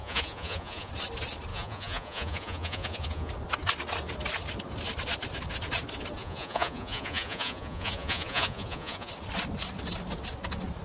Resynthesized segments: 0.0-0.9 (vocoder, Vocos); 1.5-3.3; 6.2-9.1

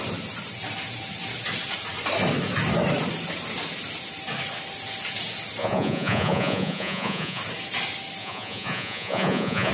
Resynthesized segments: 5.6-7.4 (vocoder, Vocos); 8.2-9.7